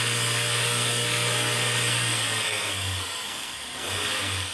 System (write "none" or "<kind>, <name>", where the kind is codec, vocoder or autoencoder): codec, SNAC